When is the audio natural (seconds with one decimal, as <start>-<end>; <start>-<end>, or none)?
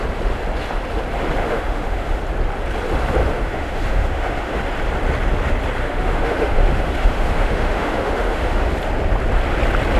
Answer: 0.0-1.4; 2.2-3.2; 4.6-5.8; 8.7-10.0